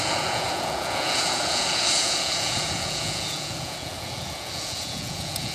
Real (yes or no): no